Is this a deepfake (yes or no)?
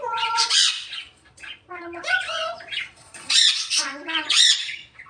yes